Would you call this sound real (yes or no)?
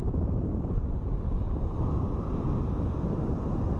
yes